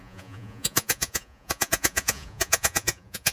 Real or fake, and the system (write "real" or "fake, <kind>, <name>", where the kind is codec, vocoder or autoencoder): fake, vocoder, Vocos